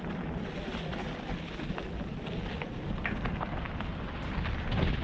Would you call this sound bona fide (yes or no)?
yes